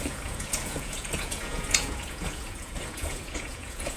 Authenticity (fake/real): fake